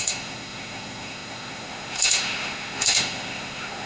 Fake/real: fake